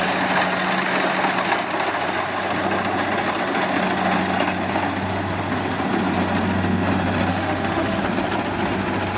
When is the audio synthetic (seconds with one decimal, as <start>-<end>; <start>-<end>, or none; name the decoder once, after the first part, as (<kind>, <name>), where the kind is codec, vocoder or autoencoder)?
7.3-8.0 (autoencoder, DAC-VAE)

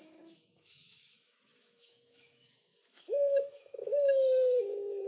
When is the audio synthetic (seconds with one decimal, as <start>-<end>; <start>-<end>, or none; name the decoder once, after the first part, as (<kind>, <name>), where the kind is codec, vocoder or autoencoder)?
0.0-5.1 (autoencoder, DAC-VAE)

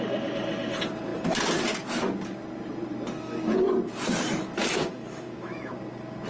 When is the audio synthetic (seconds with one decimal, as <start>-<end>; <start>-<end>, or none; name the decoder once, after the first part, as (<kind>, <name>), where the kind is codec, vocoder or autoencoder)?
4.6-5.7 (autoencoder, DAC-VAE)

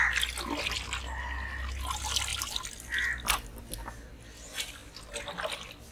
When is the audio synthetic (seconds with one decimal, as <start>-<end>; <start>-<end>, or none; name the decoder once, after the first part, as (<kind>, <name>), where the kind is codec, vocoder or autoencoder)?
none